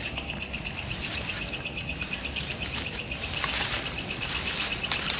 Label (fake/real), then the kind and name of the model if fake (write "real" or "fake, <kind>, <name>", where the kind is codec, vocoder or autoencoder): real